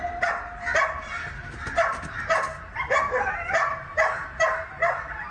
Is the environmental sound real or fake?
real